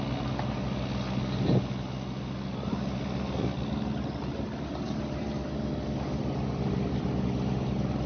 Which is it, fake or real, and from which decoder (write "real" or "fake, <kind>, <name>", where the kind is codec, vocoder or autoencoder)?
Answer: real